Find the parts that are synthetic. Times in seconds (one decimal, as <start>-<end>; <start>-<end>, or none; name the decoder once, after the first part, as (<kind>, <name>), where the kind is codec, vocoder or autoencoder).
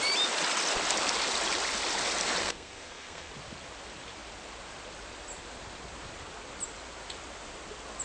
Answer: 2.4-3.3 (codec, SNAC)